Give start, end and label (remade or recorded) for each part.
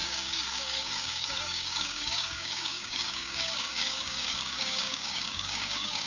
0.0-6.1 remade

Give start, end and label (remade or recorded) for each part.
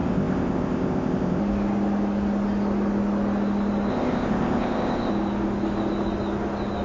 0.0-1.4 remade; 1.4-3.9 recorded; 3.9-5.1 remade; 5.1-6.8 recorded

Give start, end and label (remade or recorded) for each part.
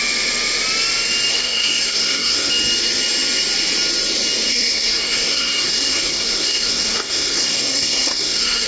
0.0-1.3 recorded; 1.3-2.5 remade; 2.5-4.5 recorded; 4.5-8.7 remade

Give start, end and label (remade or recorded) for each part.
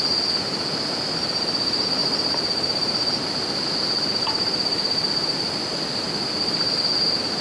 0.0-7.4 recorded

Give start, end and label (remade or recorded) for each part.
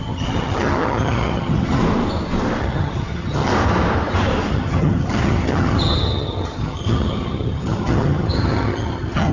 0.0-1.8 remade; 1.8-2.6 recorded; 2.6-3.5 remade; 3.5-4.5 recorded; 4.5-9.3 remade